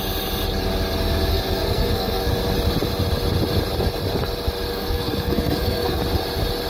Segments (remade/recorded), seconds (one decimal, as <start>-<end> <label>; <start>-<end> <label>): 0.0-1.3 recorded; 1.3-2.3 remade; 2.3-4.7 recorded; 4.7-6.0 remade; 6.0-6.7 recorded